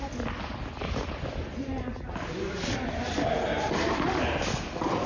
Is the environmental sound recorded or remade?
recorded